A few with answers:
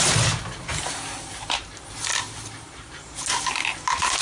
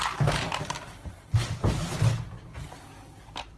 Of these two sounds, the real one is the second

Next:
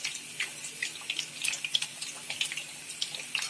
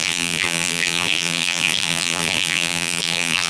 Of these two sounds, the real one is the first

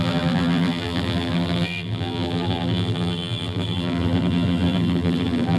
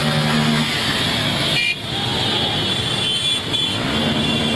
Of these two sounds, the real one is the second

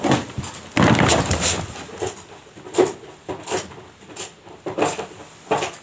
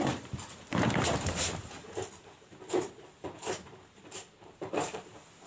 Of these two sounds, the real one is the first